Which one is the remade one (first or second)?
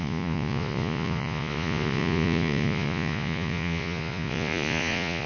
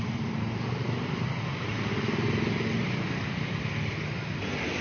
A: first